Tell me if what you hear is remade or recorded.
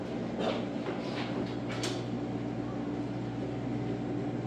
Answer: recorded